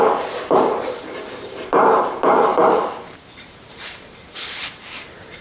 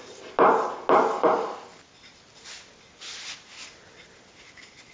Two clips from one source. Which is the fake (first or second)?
first